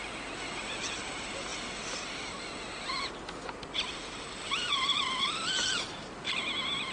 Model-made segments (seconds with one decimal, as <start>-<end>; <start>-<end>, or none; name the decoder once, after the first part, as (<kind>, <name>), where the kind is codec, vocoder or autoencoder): none